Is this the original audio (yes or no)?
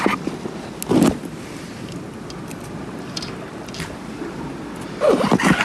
yes